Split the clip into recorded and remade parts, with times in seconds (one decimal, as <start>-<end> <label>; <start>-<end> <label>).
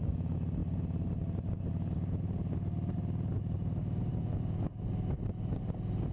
0.0-4.1 recorded; 4.1-4.8 remade; 4.8-6.1 recorded